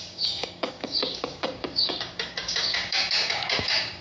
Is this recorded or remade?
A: remade